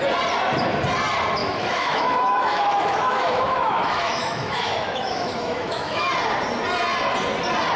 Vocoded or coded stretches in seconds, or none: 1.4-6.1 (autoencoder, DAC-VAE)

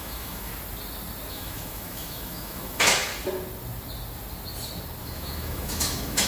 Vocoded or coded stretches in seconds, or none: 0.0-0.5 (autoencoder, DAC-VAE); 1.3-3.1; 5.0-6.3

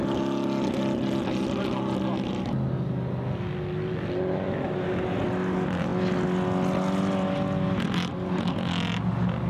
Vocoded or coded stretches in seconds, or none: none

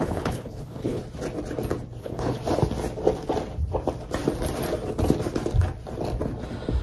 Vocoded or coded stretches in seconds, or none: 0.0-1.0 (codec, HILCodec); 2.0-2.4

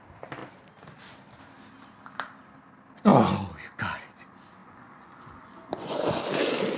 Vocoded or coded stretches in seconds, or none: 4.6-6.2 (vocoder, Vocos)

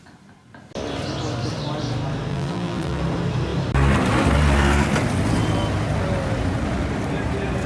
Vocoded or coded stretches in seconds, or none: 2.3-3.0 (vocoder, BigVGAN v2)

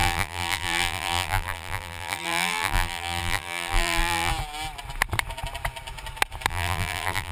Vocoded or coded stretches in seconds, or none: 0.0-4.3 (vocoder, BigVGAN v2); 6.5-7.3

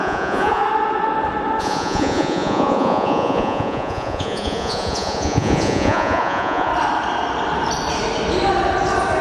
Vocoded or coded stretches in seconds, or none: 0.0-0.6 (vocoder, Vocos); 1.6-6.7